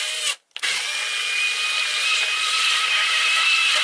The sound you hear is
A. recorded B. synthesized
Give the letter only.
A